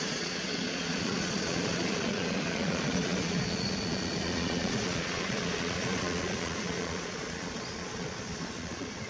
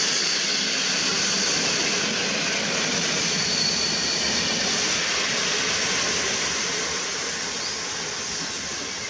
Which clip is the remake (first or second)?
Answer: first